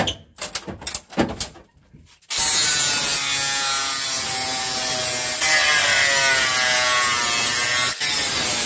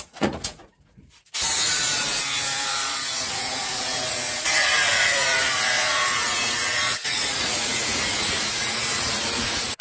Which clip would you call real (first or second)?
first